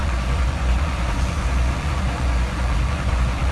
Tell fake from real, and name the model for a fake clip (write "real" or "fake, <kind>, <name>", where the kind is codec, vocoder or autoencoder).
fake, vocoder, Vocos